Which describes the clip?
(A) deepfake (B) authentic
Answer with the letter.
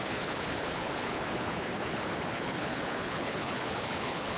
A